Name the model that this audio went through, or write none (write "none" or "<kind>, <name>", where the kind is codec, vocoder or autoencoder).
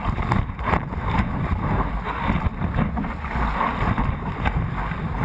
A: none